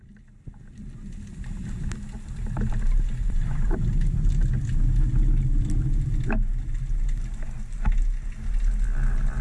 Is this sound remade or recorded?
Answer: recorded